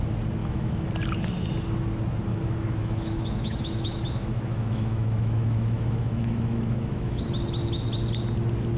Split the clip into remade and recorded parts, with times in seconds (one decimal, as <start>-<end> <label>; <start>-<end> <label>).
0.0-0.4 recorded; 0.4-0.9 remade; 0.9-2.3 recorded; 2.3-7.2 remade; 7.2-8.8 recorded